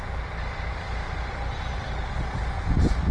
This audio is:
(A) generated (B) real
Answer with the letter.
B